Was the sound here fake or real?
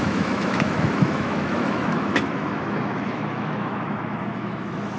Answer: fake